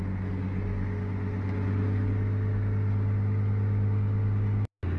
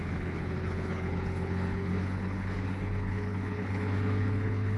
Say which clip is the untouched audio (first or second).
first